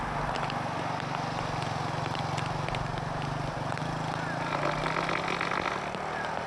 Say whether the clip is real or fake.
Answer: real